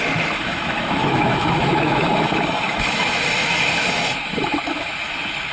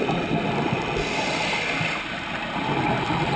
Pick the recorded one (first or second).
second